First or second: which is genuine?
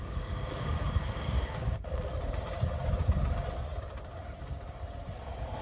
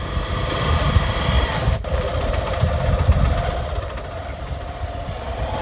second